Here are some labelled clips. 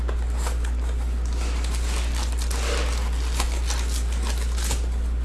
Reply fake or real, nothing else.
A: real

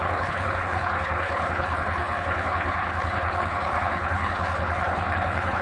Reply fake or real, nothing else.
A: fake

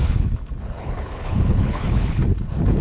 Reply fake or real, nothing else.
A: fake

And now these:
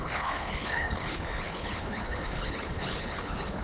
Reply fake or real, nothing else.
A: fake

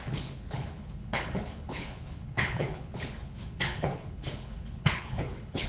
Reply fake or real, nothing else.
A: fake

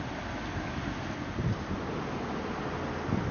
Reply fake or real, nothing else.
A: real